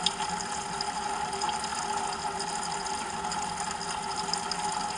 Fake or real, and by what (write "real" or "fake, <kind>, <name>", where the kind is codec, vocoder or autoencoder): real